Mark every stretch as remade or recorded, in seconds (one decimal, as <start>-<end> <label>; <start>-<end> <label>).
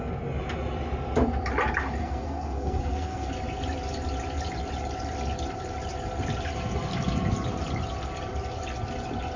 0.0-2.0 recorded; 2.0-3.3 remade; 3.3-9.4 recorded